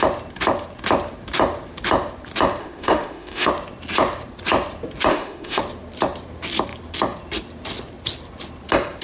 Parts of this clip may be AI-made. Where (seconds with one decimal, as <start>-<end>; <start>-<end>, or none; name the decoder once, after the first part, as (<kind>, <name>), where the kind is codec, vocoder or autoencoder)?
2.6-3.5 (autoencoder, DAC-VAE); 5.1-5.6